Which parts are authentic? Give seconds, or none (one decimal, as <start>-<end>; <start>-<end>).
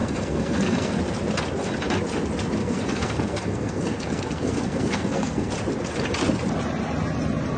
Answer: 1.0-2.6; 5.5-7.6